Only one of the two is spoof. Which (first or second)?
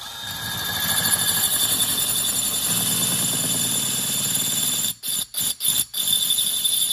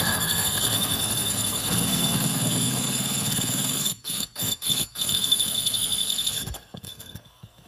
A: second